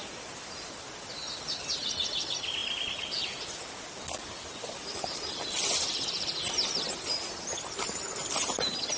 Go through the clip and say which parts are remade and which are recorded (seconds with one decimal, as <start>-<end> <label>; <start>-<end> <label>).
0.0-9.0 recorded